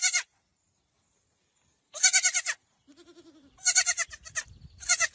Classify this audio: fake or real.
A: real